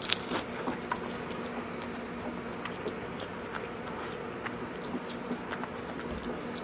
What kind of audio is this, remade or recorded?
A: recorded